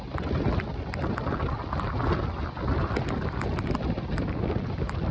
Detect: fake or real real